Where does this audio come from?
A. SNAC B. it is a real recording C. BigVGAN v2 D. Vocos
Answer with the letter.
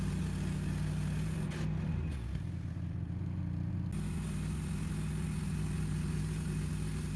B